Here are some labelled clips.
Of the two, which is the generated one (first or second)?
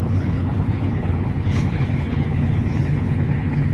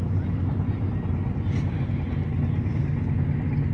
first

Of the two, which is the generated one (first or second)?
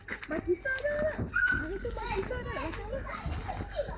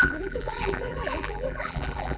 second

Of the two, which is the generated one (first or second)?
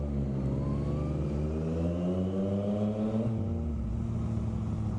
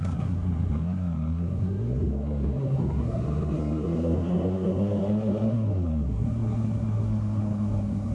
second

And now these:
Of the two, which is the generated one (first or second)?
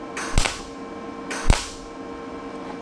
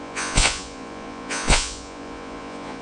second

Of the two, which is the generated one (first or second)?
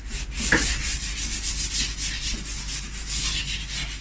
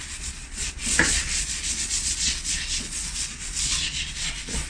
second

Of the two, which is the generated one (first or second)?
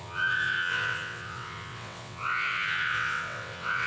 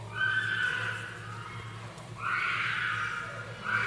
first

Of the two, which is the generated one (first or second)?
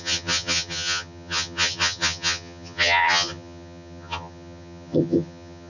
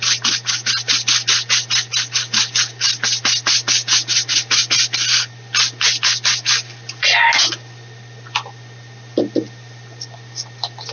first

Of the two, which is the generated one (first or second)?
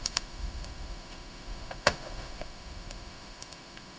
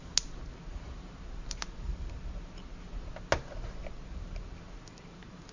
first